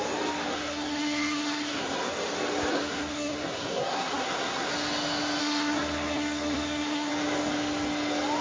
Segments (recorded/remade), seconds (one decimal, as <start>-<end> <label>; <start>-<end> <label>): 0.0-0.5 recorded; 0.5-2.1 remade; 2.1-2.7 recorded; 2.7-4.7 remade; 4.7-5.4 recorded; 5.4-7.1 remade; 7.1-8.4 recorded